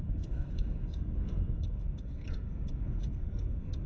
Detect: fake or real fake